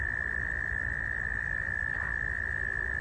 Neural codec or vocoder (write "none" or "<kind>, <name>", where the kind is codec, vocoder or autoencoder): none